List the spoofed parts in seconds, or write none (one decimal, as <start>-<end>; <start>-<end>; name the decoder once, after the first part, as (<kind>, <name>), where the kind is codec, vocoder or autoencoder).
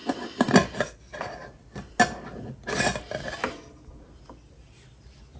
none